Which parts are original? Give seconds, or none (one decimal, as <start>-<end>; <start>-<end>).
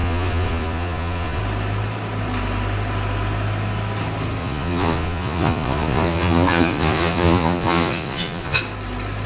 1.4-4.4; 8.6-9.3